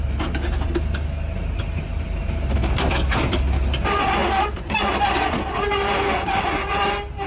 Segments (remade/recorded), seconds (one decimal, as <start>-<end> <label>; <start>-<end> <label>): 0.0-7.3 recorded